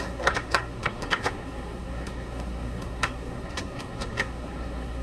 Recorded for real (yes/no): no